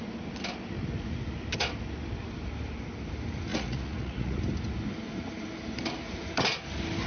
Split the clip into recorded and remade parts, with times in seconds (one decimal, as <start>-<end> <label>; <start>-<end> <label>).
0.0-3.5 recorded; 3.5-4.4 remade; 4.4-7.1 recorded